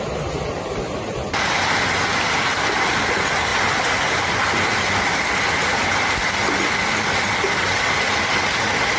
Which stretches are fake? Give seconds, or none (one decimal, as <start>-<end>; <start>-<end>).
none